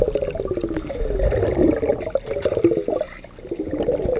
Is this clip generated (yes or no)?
no